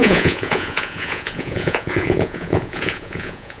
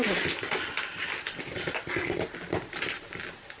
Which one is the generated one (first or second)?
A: first